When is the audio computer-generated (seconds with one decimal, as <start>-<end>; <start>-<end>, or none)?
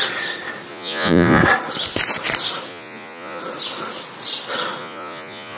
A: 0.7-1.4; 2.7-3.4; 4.8-5.6